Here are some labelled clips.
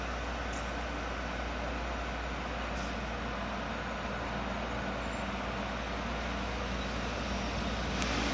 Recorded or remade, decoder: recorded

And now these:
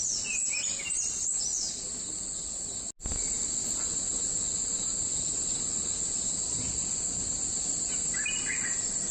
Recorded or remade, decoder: recorded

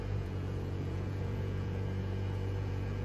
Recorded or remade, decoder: remade, vocoder, Vocos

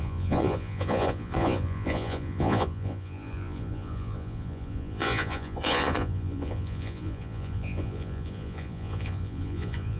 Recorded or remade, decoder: remade, vocoder, Vocos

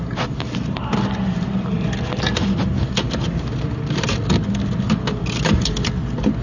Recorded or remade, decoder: recorded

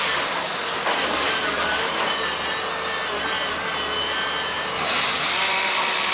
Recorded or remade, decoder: recorded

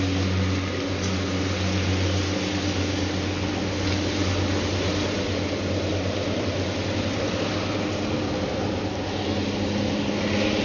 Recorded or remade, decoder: recorded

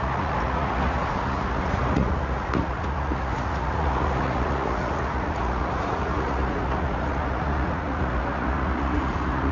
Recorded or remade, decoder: remade, vocoder, Vocos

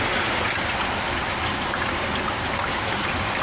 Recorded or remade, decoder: recorded